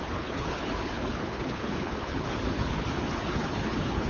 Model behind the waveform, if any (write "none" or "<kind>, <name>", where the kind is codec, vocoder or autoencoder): codec, HILCodec